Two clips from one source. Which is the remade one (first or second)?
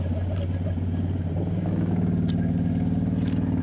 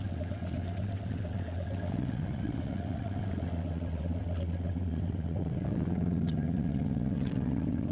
second